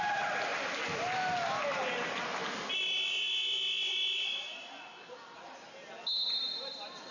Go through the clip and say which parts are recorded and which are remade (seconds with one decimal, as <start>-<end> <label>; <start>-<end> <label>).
0.0-7.1 recorded

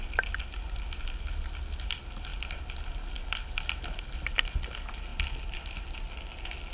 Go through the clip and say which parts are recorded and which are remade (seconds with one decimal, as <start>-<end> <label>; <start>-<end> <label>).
0.0-6.7 recorded

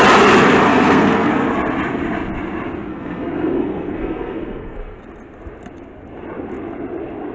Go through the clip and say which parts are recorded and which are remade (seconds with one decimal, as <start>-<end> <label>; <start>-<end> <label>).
0.0-0.7 recorded; 0.7-1.3 remade; 1.3-2.9 recorded; 2.9-5.0 remade; 5.0-7.3 recorded

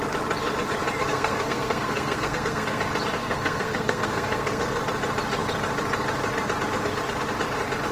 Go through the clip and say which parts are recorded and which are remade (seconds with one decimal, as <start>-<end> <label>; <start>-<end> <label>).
0.0-1.0 recorded; 1.0-2.8 remade; 2.8-3.2 recorded; 3.2-4.8 remade; 4.8-7.9 recorded

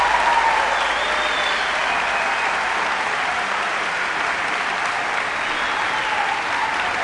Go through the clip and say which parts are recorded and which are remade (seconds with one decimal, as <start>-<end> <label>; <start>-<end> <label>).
0.0-7.0 recorded

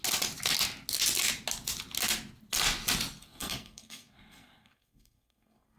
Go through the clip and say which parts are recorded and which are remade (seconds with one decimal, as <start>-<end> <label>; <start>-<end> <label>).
0.0-3.2 recorded; 3.2-5.8 remade

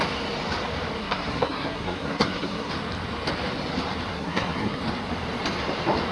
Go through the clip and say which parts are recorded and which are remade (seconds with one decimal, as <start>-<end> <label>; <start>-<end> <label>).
0.0-1.0 recorded; 1.0-2.7 remade; 2.7-4.1 recorded; 4.1-4.8 remade; 4.8-6.1 recorded

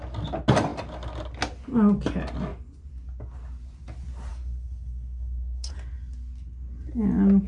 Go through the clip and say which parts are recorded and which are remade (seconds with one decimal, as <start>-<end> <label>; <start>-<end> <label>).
0.0-4.3 recorded; 4.3-5.7 remade; 5.7-7.5 recorded